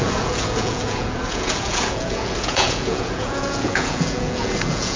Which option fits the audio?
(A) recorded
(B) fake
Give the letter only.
B